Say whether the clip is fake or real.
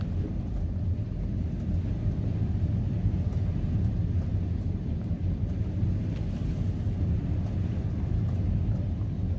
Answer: real